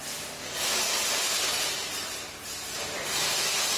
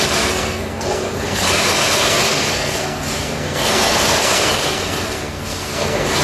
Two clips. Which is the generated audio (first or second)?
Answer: second